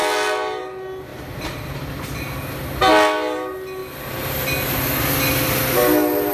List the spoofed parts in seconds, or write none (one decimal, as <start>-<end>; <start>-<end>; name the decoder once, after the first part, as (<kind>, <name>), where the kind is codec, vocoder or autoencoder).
1.1-1.9 (vocoder, BigVGAN v2)